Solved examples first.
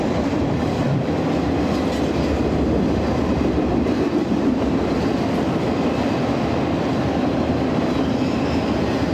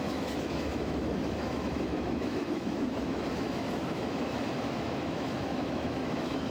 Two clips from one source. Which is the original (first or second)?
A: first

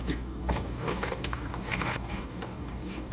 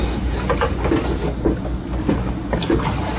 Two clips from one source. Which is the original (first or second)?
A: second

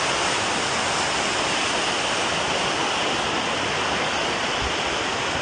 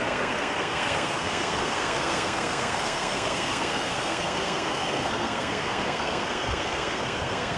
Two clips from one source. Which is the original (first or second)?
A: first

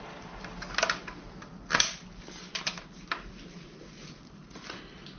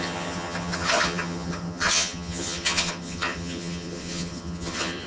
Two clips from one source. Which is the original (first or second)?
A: first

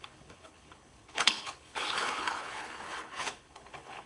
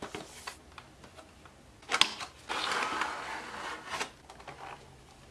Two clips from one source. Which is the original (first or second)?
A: second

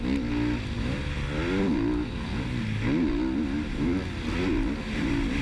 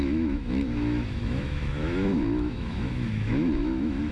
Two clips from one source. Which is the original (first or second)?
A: first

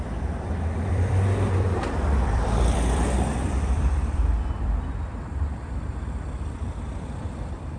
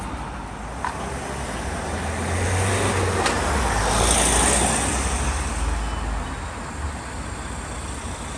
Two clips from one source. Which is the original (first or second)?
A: second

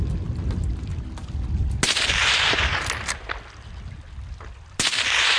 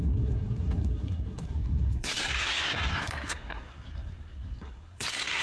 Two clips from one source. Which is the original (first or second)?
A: first